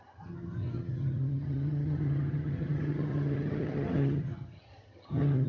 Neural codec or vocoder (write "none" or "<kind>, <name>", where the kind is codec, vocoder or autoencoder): vocoder, HiFi-GAN